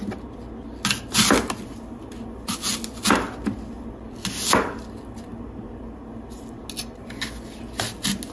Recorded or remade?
recorded